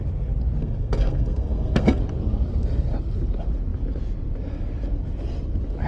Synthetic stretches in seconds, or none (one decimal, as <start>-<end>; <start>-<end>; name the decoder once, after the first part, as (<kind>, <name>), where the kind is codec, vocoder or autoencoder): 0.6-2.0 (codec, SNAC)